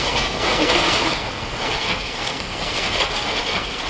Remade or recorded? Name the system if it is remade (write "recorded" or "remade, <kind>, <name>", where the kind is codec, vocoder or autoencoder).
remade, codec, SNAC